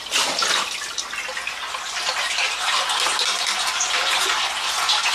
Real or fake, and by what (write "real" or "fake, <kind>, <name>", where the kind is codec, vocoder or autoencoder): real